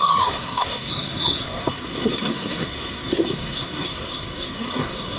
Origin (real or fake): fake